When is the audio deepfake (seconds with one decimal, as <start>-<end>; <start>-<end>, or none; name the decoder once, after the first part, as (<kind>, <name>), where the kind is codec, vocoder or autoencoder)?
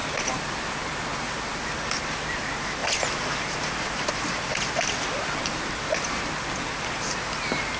none